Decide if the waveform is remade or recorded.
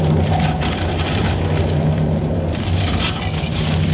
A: remade